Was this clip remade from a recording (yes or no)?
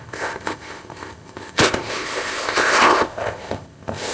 yes